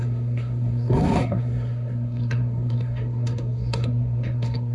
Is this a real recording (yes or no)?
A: no